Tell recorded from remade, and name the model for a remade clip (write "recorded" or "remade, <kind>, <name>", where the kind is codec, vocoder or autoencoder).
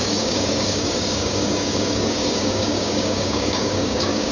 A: remade, codec, DAC